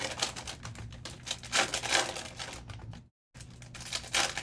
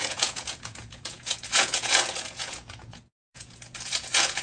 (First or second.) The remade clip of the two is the second